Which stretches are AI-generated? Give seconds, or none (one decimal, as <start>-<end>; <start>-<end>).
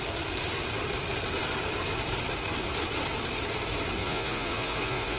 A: 4.0-5.2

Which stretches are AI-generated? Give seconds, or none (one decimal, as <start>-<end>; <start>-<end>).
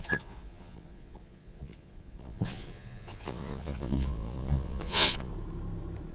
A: 0.0-5.3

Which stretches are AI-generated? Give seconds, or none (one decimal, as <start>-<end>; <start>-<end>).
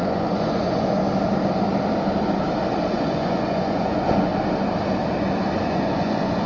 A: 0.0-1.0; 2.9-4.3; 5.6-6.5